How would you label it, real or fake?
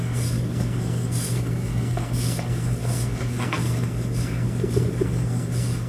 fake